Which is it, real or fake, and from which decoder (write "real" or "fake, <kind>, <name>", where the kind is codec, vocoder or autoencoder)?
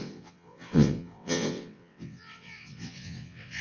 fake, vocoder, WaveNeXt